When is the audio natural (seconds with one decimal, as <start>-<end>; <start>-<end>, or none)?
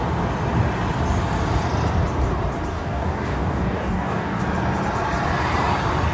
0.0-2.7; 4.4-6.1